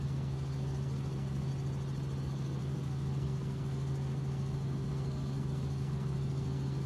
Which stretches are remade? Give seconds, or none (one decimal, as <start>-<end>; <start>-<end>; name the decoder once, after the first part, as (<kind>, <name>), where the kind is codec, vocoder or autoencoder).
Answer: 0.0-1.5 (codec, SNAC); 2.2-6.9